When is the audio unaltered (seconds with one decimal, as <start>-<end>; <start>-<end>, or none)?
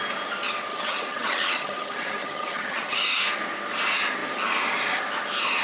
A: 0.0-0.7; 3.2-5.6